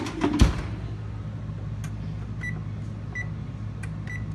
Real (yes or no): yes